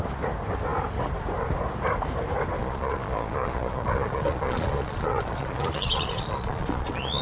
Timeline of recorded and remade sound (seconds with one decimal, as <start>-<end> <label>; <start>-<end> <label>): 0.0-2.6 recorded; 2.6-7.2 remade